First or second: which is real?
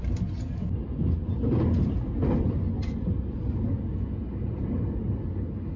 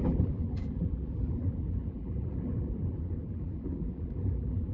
first